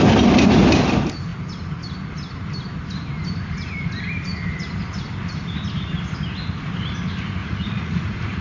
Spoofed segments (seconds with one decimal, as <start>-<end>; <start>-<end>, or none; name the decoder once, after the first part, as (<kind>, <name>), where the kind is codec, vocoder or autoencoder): 7.4-8.4 (vocoder, Vocos)